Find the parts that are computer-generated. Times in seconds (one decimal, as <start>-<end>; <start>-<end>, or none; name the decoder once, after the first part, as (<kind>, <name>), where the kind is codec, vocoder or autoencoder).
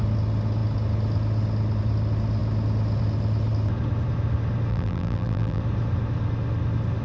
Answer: 4.7-5.6 (vocoder, BigVGAN v2)